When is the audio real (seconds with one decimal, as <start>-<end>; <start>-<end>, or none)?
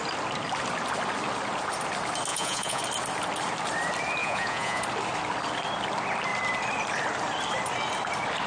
0.0-2.3; 2.8-4.2; 4.8-8.5